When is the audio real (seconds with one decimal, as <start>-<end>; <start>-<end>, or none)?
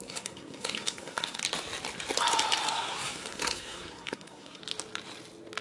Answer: 1.4-2.7; 4.6-5.6